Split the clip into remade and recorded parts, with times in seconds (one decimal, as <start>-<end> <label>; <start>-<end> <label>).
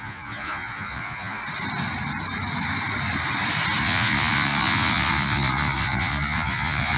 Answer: 0.0-1.4 remade; 1.4-3.8 recorded; 3.8-7.0 remade